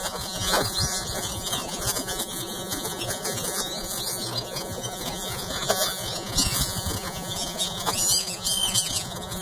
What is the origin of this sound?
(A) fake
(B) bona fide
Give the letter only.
A